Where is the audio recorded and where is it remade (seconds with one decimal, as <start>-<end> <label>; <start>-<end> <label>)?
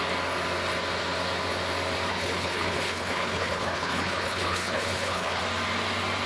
0.0-2.1 recorded; 2.1-5.4 remade; 5.4-6.3 recorded